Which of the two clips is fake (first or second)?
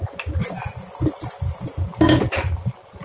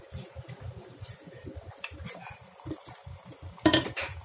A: second